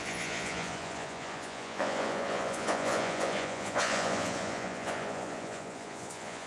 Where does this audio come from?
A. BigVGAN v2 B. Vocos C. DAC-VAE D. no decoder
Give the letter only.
B